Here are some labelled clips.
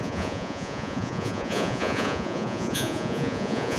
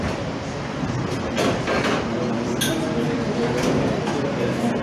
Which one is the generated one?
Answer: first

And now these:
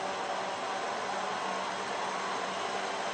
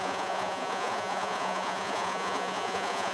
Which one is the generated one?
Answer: second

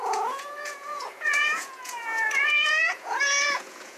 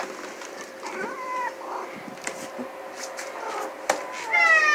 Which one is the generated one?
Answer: first